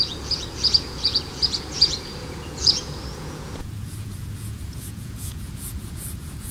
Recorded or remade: remade